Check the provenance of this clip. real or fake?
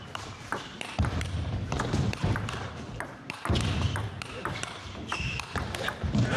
fake